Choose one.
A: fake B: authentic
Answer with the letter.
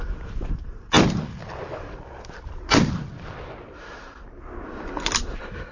B